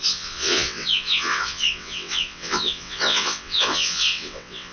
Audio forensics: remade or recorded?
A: remade